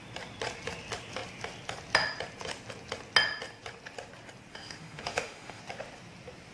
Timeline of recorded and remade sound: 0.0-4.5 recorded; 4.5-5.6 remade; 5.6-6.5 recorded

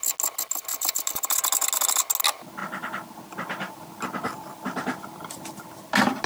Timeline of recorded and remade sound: 0.0-6.3 recorded